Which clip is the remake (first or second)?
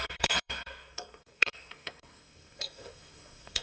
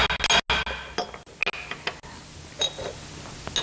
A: first